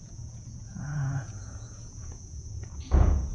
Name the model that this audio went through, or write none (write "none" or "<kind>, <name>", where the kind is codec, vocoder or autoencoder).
vocoder, Vocos